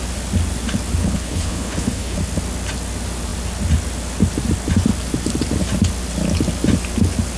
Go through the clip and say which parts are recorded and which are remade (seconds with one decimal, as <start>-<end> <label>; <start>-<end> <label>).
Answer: 0.0-1.0 recorded; 1.0-2.2 remade; 2.2-7.4 recorded

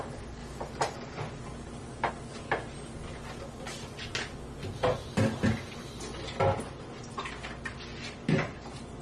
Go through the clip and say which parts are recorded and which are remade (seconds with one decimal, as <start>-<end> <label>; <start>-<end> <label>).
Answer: 0.0-9.0 recorded

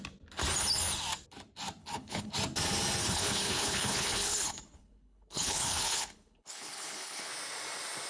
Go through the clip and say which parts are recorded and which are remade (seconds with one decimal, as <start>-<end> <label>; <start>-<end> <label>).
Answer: 0.0-1.8 recorded; 1.8-2.3 remade; 2.3-3.0 recorded; 3.0-7.3 remade; 7.3-8.1 recorded

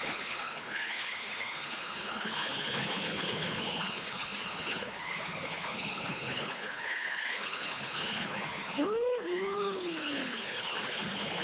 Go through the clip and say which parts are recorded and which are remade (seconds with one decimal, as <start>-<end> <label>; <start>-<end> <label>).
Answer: 0.0-11.4 remade

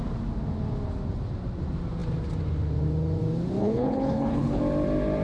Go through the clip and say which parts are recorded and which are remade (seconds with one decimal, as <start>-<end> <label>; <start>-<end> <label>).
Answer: 0.0-3.6 recorded; 3.6-4.6 remade; 4.6-5.2 recorded

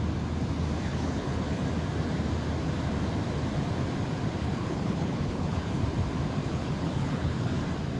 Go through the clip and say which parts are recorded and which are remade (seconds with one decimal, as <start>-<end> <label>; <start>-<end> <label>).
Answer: 0.0-0.9 recorded; 0.9-1.6 remade; 1.6-4.4 recorded; 4.4-5.8 remade; 5.8-6.4 recorded; 6.4-7.5 remade; 7.5-8.0 recorded

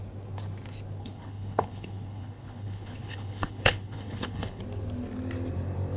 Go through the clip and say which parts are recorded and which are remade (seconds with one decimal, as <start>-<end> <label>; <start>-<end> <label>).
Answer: 0.0-1.0 recorded; 1.0-4.6 remade; 4.6-6.0 recorded